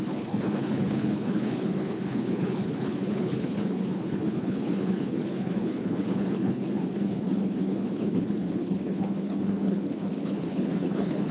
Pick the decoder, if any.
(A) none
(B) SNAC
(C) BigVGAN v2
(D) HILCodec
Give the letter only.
D